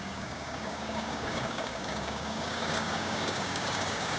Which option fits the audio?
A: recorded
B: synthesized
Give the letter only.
B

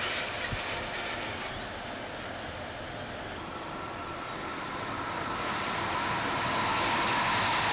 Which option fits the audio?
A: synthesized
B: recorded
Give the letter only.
B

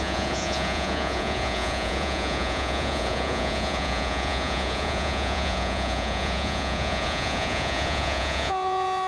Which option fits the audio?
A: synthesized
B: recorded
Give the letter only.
A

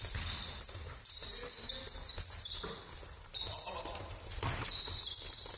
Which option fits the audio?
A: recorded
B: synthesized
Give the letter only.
A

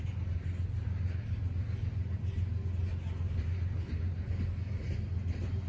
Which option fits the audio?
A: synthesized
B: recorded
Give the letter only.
B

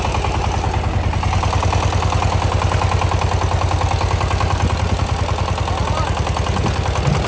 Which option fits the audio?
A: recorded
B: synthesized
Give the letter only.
A